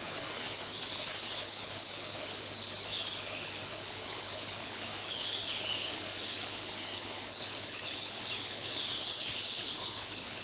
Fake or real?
fake